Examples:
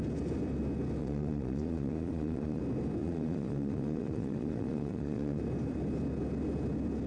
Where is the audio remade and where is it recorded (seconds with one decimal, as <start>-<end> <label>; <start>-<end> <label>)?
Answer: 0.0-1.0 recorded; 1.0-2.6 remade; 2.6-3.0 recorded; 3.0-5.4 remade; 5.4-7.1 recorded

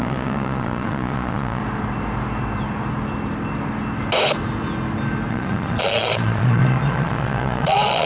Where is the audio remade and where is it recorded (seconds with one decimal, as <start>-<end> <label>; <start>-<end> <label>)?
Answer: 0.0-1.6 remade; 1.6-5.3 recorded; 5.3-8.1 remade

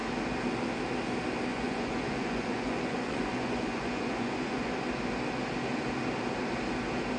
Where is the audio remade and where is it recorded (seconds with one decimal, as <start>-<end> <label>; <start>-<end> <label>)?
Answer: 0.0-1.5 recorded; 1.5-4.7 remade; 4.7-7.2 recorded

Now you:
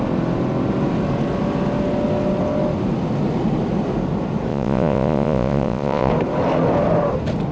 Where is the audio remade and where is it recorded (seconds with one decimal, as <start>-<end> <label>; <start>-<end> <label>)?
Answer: 0.0-4.5 recorded; 4.5-6.1 remade; 6.1-7.5 recorded

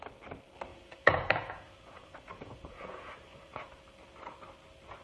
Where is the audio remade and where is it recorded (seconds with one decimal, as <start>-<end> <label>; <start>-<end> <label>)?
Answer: 0.0-0.7 recorded; 0.7-3.7 remade; 3.7-5.0 recorded

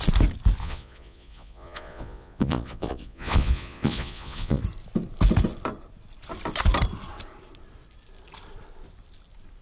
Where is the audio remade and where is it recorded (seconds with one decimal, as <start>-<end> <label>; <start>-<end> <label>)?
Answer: 0.0-0.6 recorded; 0.6-4.6 remade; 4.6-9.6 recorded